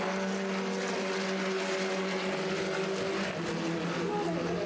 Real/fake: real